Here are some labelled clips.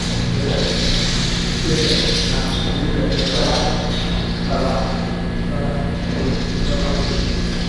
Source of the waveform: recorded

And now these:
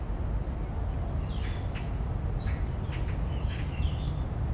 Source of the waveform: recorded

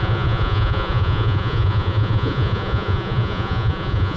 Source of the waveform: remade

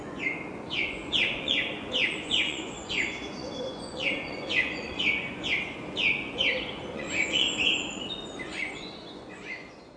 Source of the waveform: remade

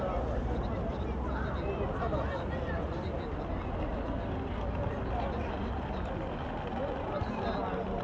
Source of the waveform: recorded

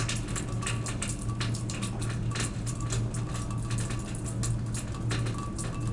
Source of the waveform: recorded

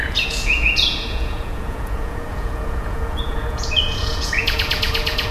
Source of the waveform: remade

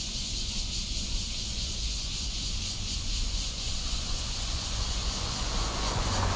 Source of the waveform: remade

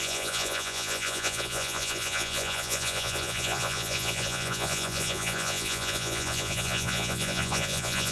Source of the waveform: remade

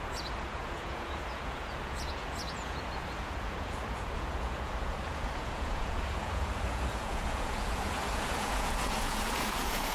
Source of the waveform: remade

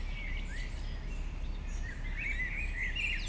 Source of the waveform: recorded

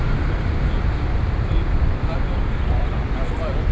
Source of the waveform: recorded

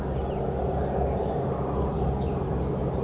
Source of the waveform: recorded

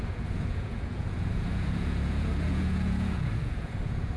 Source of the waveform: remade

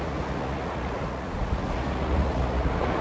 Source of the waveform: remade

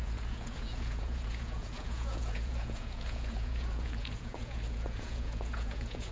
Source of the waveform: remade